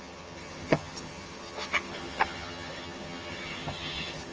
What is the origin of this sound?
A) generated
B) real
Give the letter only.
A